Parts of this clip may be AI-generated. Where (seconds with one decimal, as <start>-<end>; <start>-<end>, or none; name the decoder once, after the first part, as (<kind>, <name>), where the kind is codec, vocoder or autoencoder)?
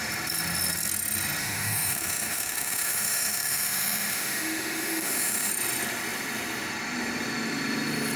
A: 1.4-5.5 (autoencoder, DAC-VAE)